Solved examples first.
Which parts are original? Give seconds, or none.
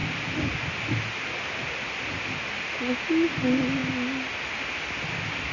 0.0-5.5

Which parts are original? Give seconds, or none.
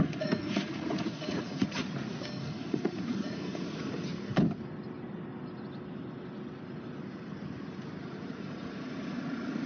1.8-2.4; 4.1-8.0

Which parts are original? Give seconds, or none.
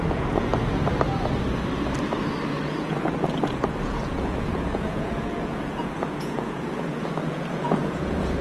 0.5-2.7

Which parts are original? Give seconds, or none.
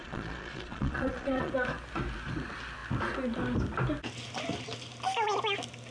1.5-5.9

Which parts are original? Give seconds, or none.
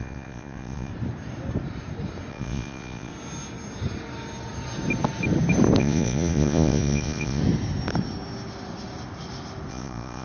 0.9-2.3; 3.1-5.8; 7.4-9.7